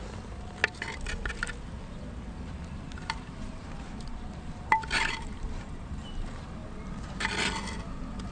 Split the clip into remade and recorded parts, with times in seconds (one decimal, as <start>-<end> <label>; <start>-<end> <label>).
0.0-0.6 remade; 0.6-3.0 recorded; 3.0-6.6 remade; 6.6-8.3 recorded